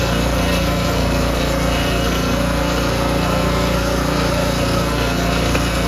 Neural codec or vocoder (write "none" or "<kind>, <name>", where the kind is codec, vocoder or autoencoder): codec, SNAC